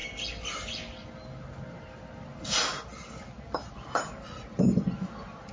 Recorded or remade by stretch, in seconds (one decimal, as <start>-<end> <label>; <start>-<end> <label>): 0.0-5.5 recorded